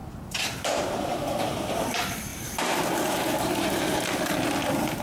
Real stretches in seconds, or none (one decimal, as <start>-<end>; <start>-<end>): 1.7-2.3; 4.0-5.0

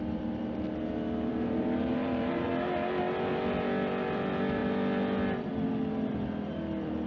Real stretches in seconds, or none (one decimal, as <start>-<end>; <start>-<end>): 0.0-1.3; 2.5-7.1

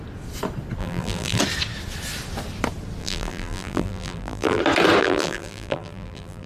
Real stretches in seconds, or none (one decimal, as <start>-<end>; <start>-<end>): 0.0-0.8; 1.4-3.0; 4.6-5.0

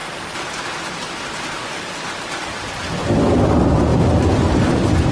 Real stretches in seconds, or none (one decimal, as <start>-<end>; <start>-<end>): 0.0-3.1; 3.9-5.1

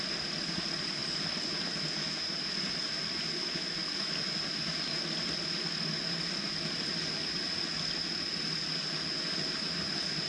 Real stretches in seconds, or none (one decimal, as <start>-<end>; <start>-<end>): 0.0-10.3

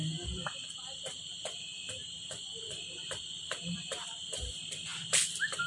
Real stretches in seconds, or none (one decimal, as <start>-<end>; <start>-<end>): 0.0-5.7

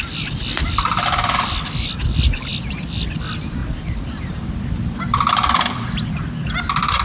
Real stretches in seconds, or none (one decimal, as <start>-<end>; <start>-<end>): 0.0-2.5; 3.1-3.6; 6.1-7.0